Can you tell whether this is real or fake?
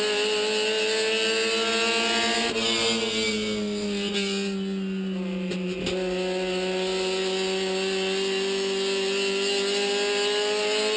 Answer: real